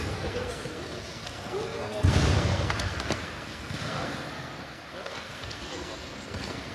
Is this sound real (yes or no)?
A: no